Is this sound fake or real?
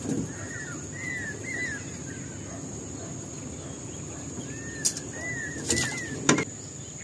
real